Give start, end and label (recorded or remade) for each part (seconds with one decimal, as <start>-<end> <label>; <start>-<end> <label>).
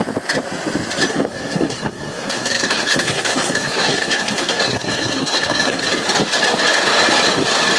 0.0-1.1 recorded; 1.1-5.8 remade; 5.8-7.8 recorded